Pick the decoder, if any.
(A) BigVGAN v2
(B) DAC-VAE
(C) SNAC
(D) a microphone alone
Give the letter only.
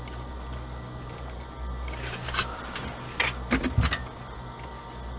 D